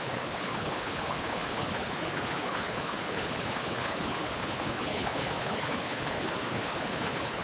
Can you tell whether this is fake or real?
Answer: fake